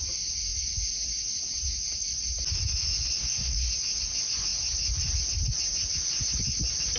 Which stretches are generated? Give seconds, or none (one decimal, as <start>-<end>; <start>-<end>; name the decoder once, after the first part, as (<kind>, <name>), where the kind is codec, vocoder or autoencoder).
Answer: 3.2-3.7 (codec, SNAC)